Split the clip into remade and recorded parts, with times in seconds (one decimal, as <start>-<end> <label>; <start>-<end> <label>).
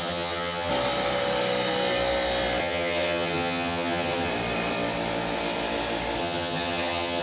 0.0-0.7 remade; 0.7-2.6 recorded; 2.6-4.3 remade; 4.3-6.2 recorded; 6.2-7.2 remade